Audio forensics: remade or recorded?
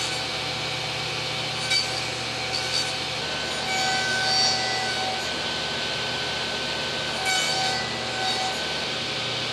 recorded